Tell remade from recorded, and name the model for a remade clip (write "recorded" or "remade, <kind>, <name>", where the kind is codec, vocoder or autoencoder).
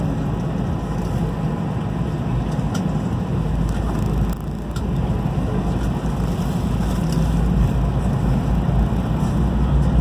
recorded